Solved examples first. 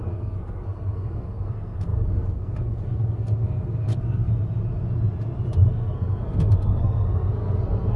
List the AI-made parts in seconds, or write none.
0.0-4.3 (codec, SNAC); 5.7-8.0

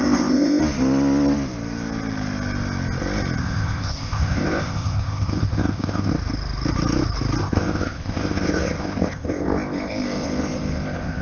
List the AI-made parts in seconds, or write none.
0.0-0.6 (codec, ZipCodec); 3.4-6.1; 7.4-11.2

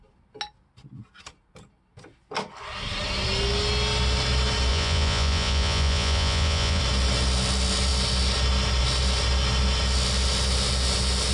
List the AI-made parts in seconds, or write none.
4.7-6.8 (vocoder, Vocos)

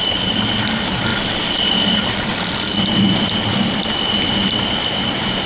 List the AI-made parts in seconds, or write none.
none

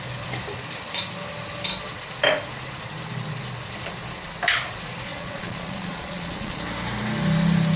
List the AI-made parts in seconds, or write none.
5.1-6.6 (vocoder, Vocos)

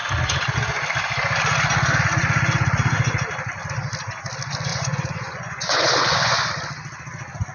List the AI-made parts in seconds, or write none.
4.7-6.5 (vocoder, Vocos)

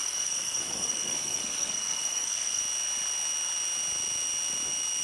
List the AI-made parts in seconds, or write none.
0.0-2.6 (codec, SNAC)